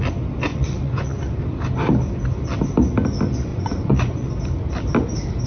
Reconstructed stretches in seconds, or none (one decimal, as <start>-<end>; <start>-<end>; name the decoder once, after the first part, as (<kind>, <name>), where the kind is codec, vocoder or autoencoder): 0.5-1.4 (vocoder, Vocos); 3.5-4.3